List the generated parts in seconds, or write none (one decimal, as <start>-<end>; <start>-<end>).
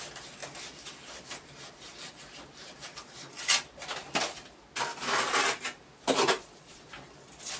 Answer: 6.4-6.9